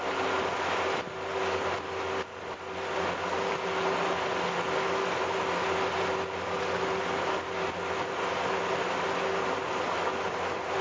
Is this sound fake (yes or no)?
no